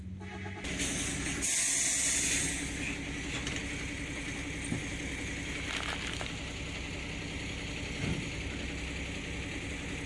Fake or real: real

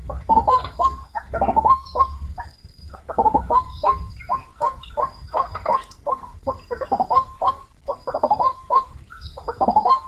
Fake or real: fake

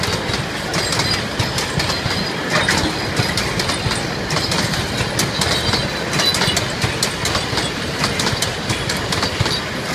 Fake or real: real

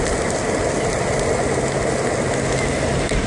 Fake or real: real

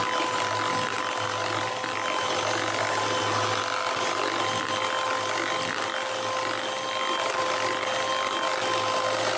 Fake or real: real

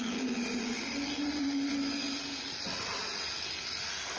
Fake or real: real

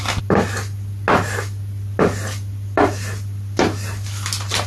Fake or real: real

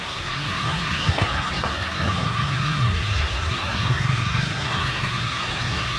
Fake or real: fake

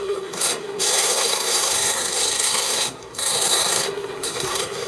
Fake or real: fake